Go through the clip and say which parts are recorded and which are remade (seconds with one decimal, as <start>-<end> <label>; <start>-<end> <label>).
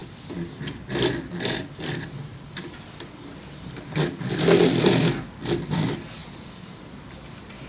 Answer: 0.0-0.6 remade; 0.6-2.3 recorded; 2.3-3.1 remade; 3.1-7.7 recorded